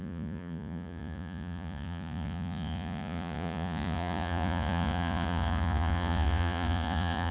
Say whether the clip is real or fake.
fake